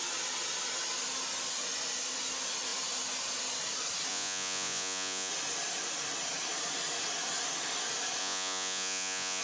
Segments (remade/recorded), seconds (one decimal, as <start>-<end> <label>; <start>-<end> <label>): 0.0-4.1 recorded; 4.1-5.3 remade; 5.3-8.2 recorded; 8.2-9.4 remade